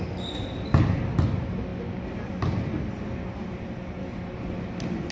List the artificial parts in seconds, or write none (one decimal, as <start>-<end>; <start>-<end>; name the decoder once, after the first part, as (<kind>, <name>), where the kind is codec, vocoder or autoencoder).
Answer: none